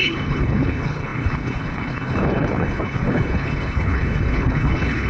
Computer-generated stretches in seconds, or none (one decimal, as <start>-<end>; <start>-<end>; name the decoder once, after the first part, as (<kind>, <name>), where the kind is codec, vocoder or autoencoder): 0.0-5.1 (codec, HILCodec)